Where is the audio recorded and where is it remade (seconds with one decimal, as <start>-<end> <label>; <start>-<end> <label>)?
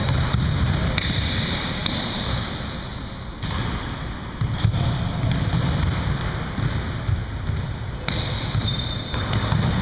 0.0-1.4 remade; 1.4-1.8 recorded; 1.8-4.4 remade; 4.4-9.8 recorded